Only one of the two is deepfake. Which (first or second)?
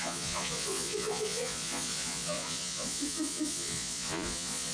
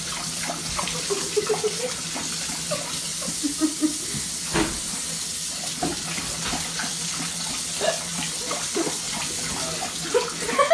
first